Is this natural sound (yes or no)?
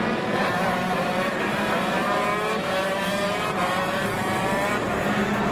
no